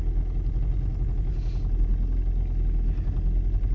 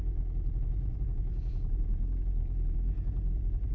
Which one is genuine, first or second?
first